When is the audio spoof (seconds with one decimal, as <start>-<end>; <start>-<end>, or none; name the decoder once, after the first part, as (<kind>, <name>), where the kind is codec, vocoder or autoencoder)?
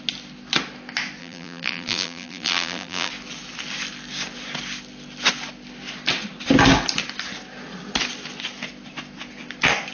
1.2-3.1 (vocoder, BigVGAN v2)